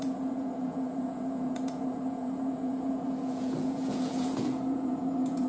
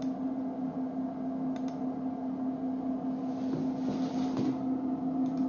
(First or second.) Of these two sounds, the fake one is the first